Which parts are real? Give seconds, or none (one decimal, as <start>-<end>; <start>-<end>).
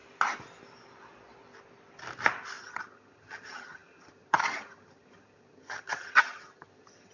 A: 0.0-2.6